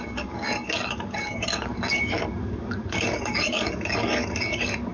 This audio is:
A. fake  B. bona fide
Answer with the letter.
A